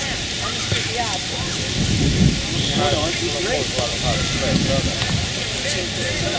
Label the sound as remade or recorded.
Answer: recorded